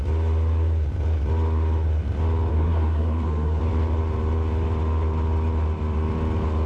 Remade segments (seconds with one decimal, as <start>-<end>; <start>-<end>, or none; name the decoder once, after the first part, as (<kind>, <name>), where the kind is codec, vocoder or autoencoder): 2.5-3.6 (codec, SNAC)